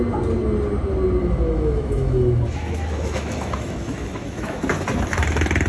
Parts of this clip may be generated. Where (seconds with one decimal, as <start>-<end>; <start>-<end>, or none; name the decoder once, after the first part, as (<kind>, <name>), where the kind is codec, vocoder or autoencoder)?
1.2-4.6 (autoencoder, DAC-VAE)